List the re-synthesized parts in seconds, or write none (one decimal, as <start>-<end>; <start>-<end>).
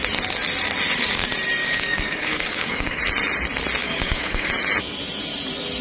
1.6-3.0; 3.8-4.5